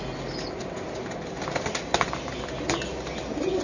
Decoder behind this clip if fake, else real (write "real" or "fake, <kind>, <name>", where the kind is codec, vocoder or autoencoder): real